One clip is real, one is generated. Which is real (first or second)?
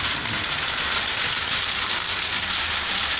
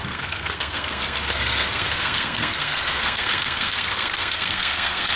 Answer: first